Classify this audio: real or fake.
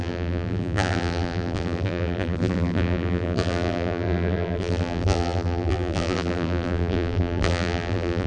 fake